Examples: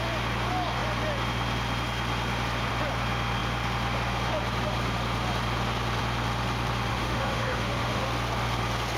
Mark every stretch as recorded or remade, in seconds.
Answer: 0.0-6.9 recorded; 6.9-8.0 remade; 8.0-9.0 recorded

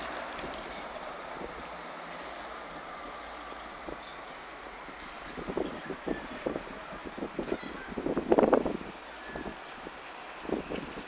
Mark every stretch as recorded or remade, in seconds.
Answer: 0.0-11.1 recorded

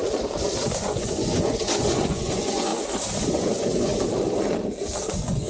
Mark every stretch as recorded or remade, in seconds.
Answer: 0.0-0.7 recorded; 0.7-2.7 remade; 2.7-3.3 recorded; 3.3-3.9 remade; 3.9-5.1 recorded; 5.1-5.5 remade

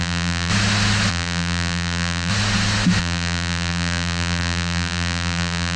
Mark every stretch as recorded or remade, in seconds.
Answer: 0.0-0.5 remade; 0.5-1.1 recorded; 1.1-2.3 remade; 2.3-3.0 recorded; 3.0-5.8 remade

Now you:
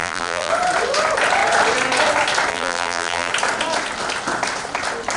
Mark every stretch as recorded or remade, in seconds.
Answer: 0.0-0.5 remade; 0.5-2.5 recorded; 2.5-3.3 remade; 3.3-5.2 recorded

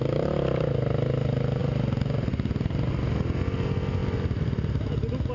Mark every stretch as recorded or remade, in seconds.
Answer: 0.0-5.3 recorded